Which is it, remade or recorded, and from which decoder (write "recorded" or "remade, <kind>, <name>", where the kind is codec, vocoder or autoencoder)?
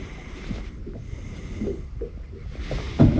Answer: recorded